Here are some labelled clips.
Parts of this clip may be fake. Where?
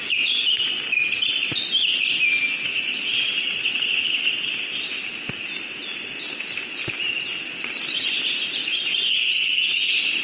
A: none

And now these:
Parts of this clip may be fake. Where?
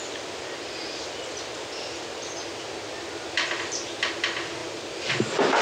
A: none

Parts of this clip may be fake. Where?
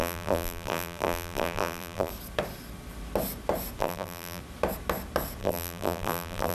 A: 0.0-2.1 (vocoder, BigVGAN v2); 3.8-4.4; 5.4-6.5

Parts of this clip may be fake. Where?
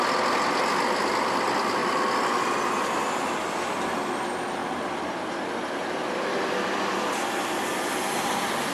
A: 3.0-3.9 (vocoder, BigVGAN v2); 4.6-5.5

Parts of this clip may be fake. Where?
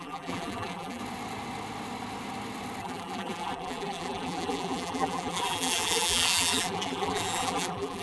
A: 0.0-1.0 (vocoder, BigVGAN v2); 2.8-8.0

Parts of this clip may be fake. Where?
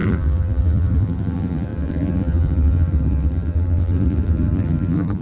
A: 0.0-5.2 (vocoder, BigVGAN v2)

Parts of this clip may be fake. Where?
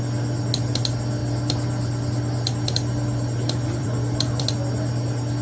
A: 1.2-4.4 (vocoder, BigVGAN v2)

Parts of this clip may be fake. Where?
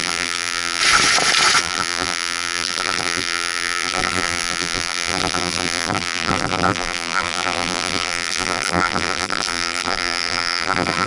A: 0.0-0.8 (vocoder, BigVGAN v2); 1.6-11.1